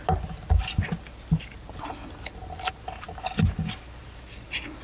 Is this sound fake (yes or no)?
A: no